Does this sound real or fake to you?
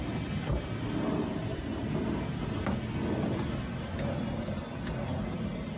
real